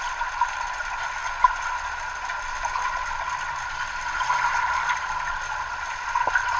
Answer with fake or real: real